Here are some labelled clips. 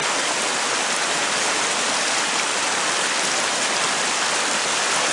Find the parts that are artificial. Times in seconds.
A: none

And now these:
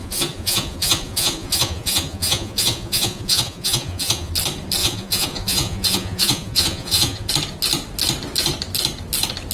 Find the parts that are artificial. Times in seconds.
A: 0.0-4.3 (vocoder, Vocos); 4.8-7.3

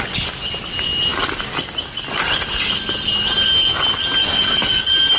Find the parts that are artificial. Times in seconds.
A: 4.2-4.8 (codec, DAC)

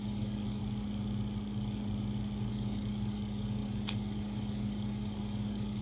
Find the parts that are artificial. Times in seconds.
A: 0.0-0.6 (codec, DAC); 2.5-5.8

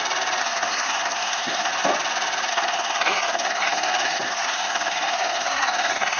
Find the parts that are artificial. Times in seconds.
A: 0.4-1.7 (codec, SNAC); 2.5-6.2

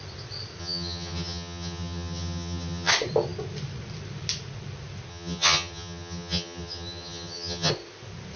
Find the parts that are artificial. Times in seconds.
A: 0.6-2.9 (vocoder, HiFi-GAN); 5.1-7.7